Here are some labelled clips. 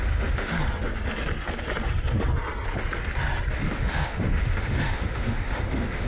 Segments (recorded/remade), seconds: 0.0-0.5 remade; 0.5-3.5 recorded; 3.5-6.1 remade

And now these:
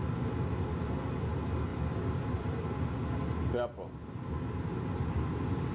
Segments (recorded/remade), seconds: 0.0-5.7 recorded